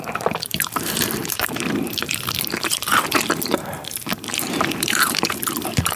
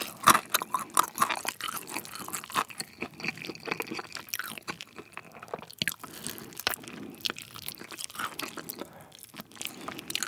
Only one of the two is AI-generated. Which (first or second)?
first